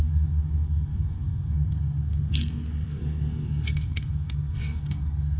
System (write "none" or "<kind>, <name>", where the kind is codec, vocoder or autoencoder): codec, SNAC